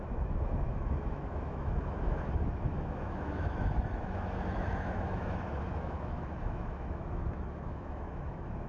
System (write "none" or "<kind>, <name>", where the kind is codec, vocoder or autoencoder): autoencoder, DAC-VAE